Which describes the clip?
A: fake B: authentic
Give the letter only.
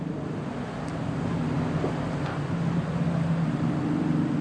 B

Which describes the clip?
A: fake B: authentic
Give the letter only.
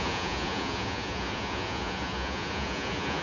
A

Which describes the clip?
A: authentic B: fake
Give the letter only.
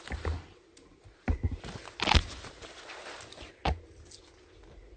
A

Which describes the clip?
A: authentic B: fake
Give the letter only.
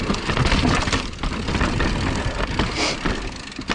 A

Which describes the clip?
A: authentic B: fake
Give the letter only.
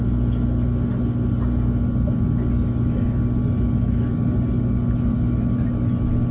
A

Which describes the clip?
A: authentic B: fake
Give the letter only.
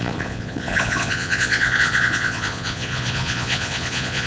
B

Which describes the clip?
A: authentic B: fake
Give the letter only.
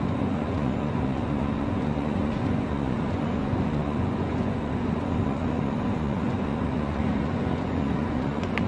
B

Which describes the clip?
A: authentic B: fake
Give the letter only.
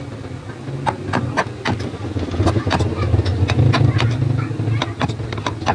A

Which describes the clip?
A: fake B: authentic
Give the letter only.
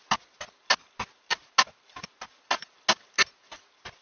B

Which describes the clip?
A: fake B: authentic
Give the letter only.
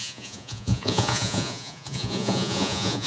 A